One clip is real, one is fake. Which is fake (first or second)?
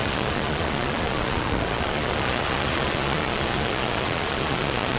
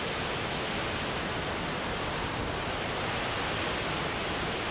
first